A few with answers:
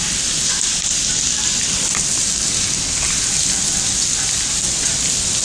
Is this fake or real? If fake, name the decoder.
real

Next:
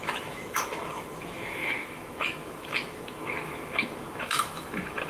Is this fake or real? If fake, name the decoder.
fake, autoencoder, DAC-VAE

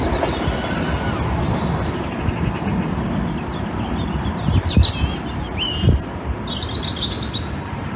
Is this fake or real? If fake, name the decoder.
real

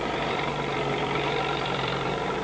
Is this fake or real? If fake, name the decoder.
fake, vocoder, BigVGAN v2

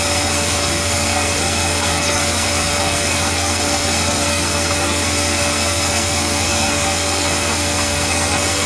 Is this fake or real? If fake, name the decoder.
fake, codec, SNAC